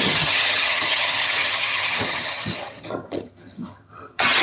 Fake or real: fake